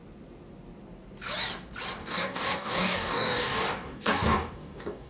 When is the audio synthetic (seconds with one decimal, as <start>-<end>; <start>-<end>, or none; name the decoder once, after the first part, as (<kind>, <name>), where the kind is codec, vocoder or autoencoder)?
2.0-5.1 (codec, DAC)